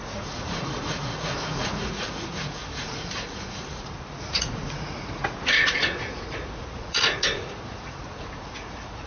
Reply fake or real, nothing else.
fake